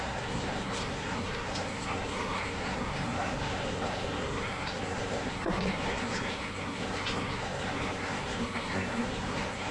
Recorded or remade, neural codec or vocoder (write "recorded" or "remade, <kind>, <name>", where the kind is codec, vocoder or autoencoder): remade, codec, SNAC